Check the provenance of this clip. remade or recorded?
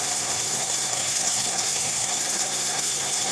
remade